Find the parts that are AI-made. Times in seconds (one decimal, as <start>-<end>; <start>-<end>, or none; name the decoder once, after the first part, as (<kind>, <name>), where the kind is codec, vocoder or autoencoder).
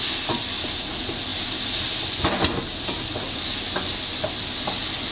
none